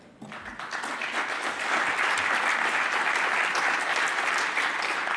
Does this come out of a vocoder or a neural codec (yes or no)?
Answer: no